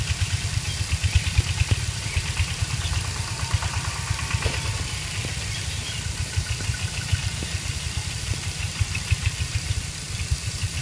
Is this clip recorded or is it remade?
remade